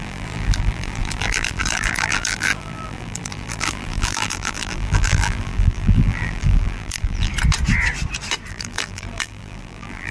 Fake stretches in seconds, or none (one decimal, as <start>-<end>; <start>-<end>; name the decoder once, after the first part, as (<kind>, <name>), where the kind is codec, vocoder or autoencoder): 0.0-7.3 (vocoder, BigVGAN v2); 8.5-10.1